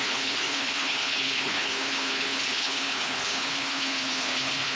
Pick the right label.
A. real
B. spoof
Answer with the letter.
B